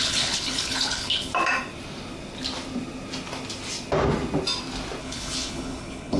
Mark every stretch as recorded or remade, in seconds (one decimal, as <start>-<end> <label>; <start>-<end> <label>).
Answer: 0.0-1.3 remade; 1.3-5.0 recorded; 5.0-6.2 remade